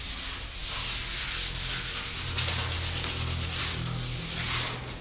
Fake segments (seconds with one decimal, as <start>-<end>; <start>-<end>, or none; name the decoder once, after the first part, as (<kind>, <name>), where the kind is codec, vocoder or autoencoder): none